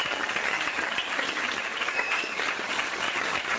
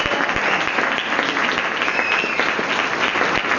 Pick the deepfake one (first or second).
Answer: first